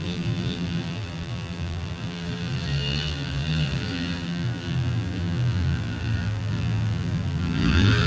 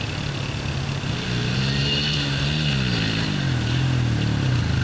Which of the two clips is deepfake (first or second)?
first